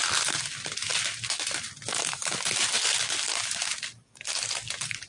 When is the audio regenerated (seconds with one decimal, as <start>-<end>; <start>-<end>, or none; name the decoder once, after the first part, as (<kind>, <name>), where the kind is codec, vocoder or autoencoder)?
none